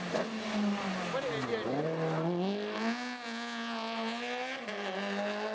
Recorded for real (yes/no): yes